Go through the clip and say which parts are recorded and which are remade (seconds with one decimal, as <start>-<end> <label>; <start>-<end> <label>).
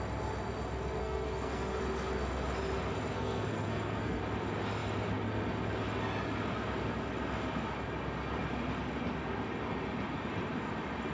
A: 0.0-1.0 recorded; 1.0-1.8 remade; 1.8-3.1 recorded; 3.1-4.2 remade; 4.2-11.1 recorded